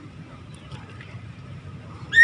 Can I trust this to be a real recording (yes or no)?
no